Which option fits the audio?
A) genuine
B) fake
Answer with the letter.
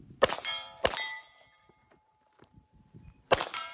B